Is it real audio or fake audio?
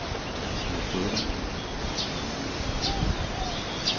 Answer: real